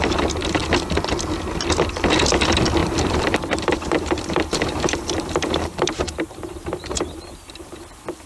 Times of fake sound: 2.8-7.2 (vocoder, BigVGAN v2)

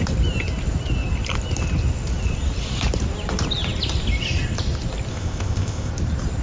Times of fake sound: 5.1-5.9 (codec, ZipCodec)

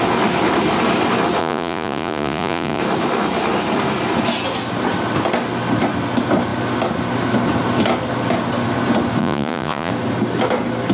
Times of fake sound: 1.4-2.8 (vocoder, Vocos); 9.2-9.9

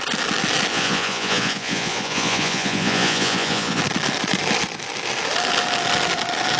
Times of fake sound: 0.7-3.8 (vocoder, Vocos)